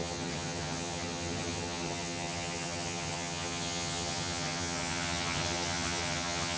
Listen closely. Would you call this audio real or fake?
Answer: fake